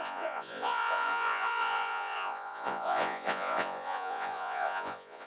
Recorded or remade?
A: remade